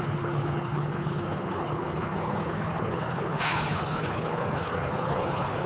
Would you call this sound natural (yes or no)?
no